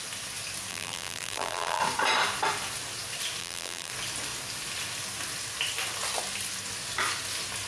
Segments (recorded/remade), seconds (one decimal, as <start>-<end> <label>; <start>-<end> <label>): 0.0-0.7 recorded; 0.7-1.8 remade; 1.8-3.4 recorded; 3.4-3.9 remade; 3.9-7.7 recorded